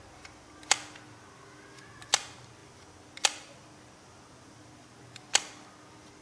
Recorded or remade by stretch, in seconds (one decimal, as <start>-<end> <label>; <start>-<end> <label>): 0.0-2.6 recorded; 2.6-4.7 remade; 4.7-6.2 recorded